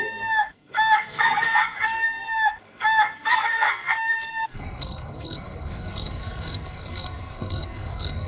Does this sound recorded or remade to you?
remade